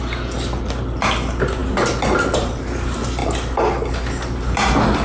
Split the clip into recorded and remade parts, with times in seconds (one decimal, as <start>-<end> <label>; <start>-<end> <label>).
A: 0.0-5.0 recorded

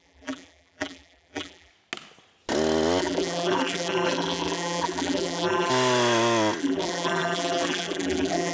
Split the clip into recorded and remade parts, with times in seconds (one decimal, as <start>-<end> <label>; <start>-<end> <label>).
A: 0.0-1.7 remade; 1.7-3.0 recorded; 3.0-5.7 remade; 5.7-6.6 recorded; 6.6-8.5 remade

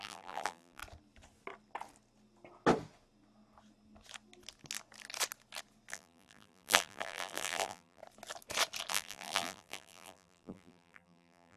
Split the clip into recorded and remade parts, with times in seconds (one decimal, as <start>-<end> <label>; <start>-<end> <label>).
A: 0.0-0.8 remade; 0.8-5.9 recorded; 5.9-8.0 remade; 8.0-8.9 recorded; 8.9-11.6 remade

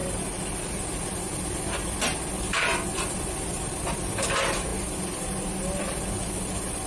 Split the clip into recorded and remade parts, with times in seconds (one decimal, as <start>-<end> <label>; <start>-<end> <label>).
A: 0.0-6.9 recorded

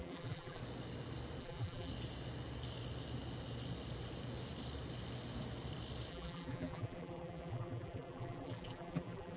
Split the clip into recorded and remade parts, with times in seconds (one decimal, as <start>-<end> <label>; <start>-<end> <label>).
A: 0.0-0.6 remade; 0.6-1.4 recorded; 1.4-1.9 remade; 1.9-6.1 recorded; 6.1-9.4 remade

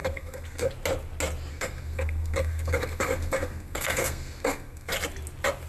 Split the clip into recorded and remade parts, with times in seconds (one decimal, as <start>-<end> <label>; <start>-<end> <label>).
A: 0.0-0.7 remade; 0.7-1.5 recorded; 1.5-4.9 remade; 4.9-5.7 recorded

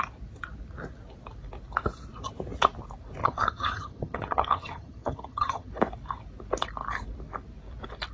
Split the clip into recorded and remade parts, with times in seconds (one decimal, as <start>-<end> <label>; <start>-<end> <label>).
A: 0.0-3.2 recorded; 3.2-5.7 remade; 5.7-8.1 recorded

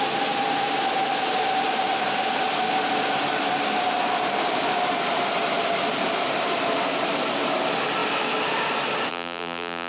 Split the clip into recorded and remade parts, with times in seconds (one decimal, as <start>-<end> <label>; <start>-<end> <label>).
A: 0.0-9.1 recorded; 9.1-9.9 remade